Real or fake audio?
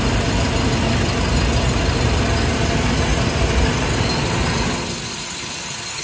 real